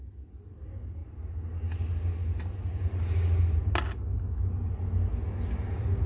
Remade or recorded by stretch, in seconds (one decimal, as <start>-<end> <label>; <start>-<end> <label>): 0.0-6.1 recorded